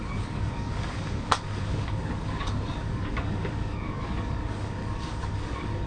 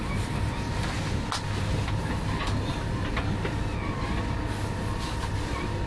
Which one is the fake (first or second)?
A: first